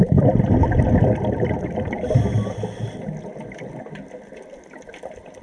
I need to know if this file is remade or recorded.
recorded